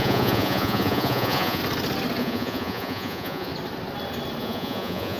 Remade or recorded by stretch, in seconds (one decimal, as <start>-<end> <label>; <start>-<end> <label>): 0.0-1.6 remade; 1.6-2.2 recorded; 2.2-3.5 remade; 3.5-4.4 recorded; 4.4-5.2 remade